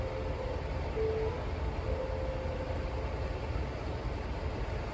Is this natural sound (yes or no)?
yes